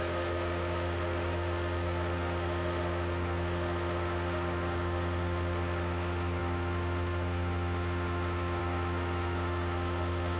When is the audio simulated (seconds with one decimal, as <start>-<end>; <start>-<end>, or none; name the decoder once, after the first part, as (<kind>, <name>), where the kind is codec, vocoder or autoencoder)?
0.0-10.4 (autoencoder, DAC-VAE)